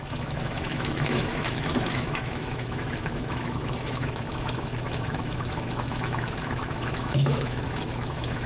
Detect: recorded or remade remade